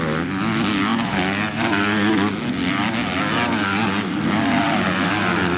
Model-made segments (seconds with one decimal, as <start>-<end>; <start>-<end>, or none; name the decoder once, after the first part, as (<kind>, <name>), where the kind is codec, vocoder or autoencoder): none

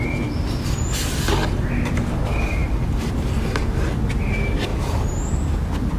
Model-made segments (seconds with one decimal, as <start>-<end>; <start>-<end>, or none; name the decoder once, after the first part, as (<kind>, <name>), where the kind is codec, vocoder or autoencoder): 4.7-5.3 (vocoder, BigVGAN v2)

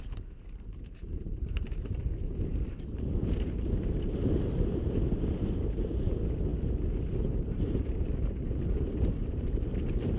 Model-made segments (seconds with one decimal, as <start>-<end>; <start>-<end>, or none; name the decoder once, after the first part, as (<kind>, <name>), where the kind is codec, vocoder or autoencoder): 0.0-6.5 (vocoder, BigVGAN v2); 7.3-10.2

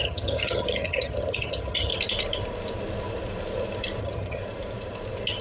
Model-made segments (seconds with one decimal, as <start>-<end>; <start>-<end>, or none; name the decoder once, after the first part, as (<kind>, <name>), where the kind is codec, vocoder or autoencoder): 0.0-1.9 (vocoder, HiFi-GAN); 4.0-4.4

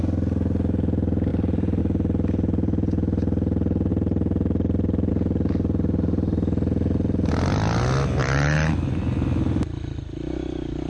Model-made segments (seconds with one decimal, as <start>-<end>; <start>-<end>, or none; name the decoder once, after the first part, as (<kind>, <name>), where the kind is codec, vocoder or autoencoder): 1.3-1.8 (vocoder, BigVGAN v2); 3.9-5.1; 8.2-8.7